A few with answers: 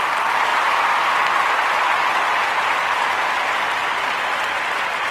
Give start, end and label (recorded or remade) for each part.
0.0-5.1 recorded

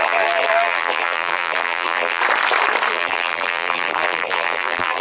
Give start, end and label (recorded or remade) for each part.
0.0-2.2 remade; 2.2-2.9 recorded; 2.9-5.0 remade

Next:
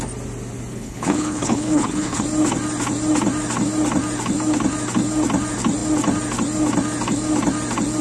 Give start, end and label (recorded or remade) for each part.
0.0-0.7 recorded; 0.7-2.2 remade; 2.2-8.0 recorded

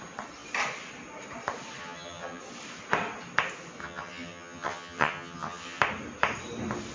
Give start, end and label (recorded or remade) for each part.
0.0-1.8 recorded; 1.8-2.4 remade; 2.4-3.8 recorded; 3.8-5.8 remade; 5.8-6.9 recorded

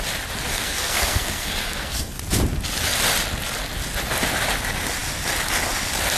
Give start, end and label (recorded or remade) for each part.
0.0-0.5 recorded; 0.5-2.2 remade; 2.2-6.2 recorded

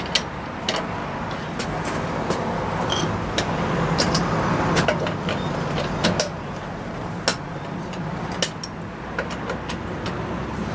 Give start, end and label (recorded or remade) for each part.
0.0-1.0 recorded; 1.0-1.7 remade; 1.7-7.3 recorded; 7.3-7.9 remade; 7.9-10.7 recorded

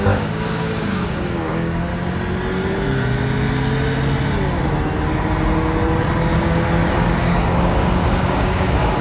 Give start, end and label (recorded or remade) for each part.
0.0-1.9 remade; 1.9-6.4 recorded; 6.4-9.0 remade